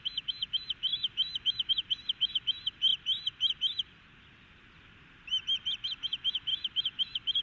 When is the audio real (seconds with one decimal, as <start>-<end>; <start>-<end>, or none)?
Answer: 0.0-7.4